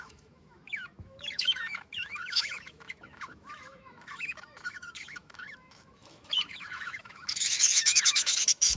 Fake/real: fake